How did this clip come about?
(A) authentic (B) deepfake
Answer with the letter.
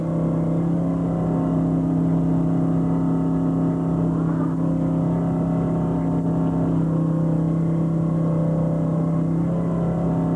A